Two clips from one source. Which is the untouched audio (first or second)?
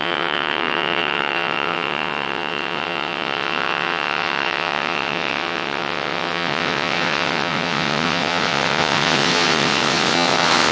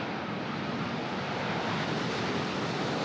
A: second